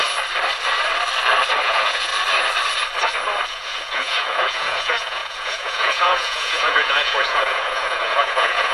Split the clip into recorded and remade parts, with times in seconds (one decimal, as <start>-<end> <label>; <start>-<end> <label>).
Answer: 0.0-1.6 recorded; 1.6-2.1 remade; 2.1-3.5 recorded; 3.5-8.7 remade